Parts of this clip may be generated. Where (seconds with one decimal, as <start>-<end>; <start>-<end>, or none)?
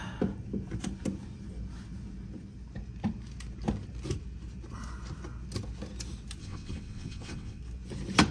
6.4-7.6